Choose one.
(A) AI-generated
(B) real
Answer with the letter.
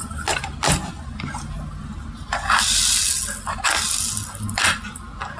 B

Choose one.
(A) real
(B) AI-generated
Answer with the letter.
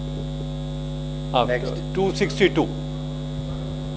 A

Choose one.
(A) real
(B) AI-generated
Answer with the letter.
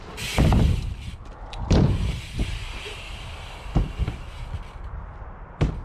A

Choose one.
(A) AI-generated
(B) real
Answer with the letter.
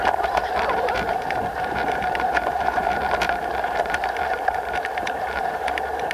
A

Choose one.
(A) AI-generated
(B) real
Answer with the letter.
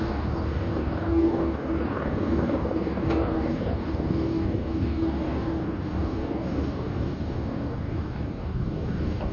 A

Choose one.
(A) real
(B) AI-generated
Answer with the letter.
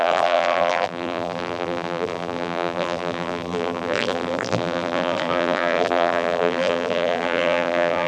B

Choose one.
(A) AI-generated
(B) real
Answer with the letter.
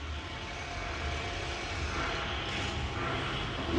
B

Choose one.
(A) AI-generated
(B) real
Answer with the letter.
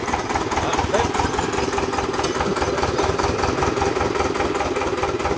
B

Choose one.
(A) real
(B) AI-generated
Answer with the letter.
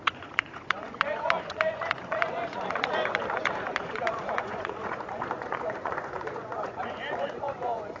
B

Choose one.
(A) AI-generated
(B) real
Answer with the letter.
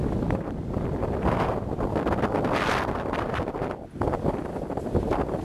B